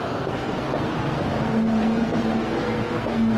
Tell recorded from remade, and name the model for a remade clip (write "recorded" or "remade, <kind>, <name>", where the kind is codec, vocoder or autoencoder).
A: remade, codec, SNAC